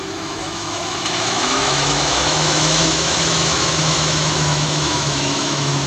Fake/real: fake